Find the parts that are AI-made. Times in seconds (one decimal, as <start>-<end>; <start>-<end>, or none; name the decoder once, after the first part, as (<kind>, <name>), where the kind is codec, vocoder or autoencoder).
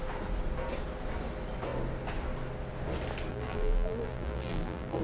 3.3-5.0 (vocoder, BigVGAN v2)